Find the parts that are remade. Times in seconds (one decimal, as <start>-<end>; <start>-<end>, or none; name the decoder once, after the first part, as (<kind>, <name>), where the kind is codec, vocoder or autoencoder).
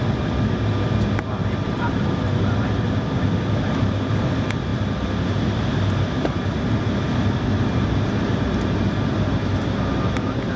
1.4-2.3 (vocoder, BigVGAN v2)